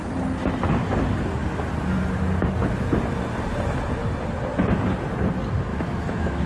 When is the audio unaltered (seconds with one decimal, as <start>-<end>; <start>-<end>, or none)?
0.0-5.7